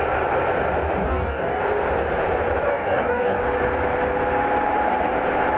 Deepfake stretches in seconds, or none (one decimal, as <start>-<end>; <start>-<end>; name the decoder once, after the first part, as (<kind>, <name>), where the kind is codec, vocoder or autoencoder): 1.0-1.6 (codec, DAC); 2.7-3.4